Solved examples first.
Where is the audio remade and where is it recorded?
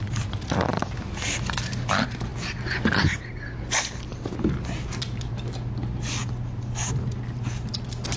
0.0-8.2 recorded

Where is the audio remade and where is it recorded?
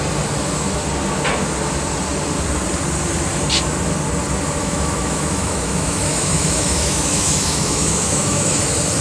0.0-4.6 recorded; 4.6-8.6 remade; 8.6-9.0 recorded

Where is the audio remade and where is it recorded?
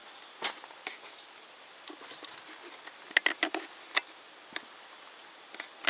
0.0-5.9 recorded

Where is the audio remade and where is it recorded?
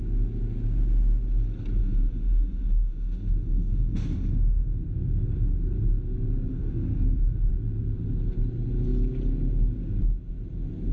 0.0-1.8 recorded; 1.8-4.8 remade; 4.8-6.5 recorded; 6.5-7.5 remade; 7.5-10.9 recorded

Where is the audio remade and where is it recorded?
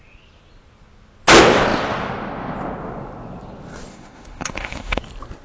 0.0-3.9 recorded; 3.9-5.0 remade; 5.0-5.4 recorded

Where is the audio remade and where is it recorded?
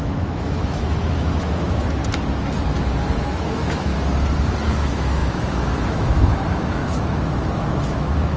0.0-2.0 remade; 2.0-3.1 recorded; 3.1-3.9 remade; 3.9-4.7 recorded; 4.7-8.4 remade